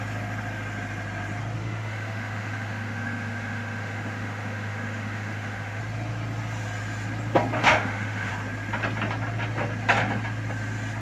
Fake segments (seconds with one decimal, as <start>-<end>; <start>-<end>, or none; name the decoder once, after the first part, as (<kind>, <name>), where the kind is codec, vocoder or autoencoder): 1.6-5.8 (autoencoder, DAC-VAE); 7.6-8.3